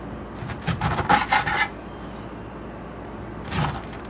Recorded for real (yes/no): yes